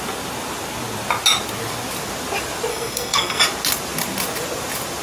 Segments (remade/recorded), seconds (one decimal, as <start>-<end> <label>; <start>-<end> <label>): 0.0-2.7 recorded; 2.7-3.4 remade; 3.4-5.0 recorded